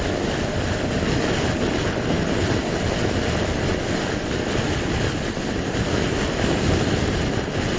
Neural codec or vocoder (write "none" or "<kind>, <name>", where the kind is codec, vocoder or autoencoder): none